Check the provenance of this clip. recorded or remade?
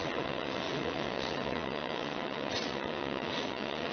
remade